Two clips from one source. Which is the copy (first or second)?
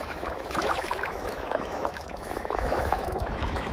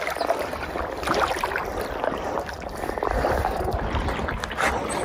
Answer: first